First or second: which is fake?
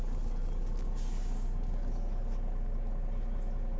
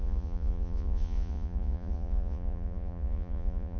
second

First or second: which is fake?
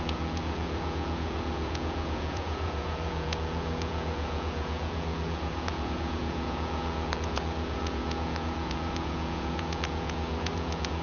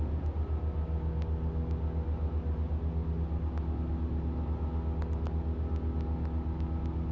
first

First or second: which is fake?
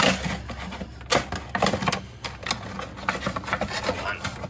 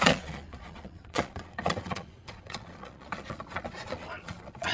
second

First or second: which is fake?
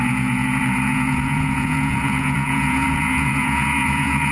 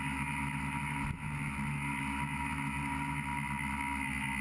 first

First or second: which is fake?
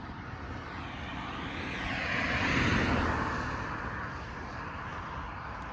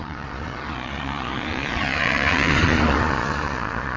second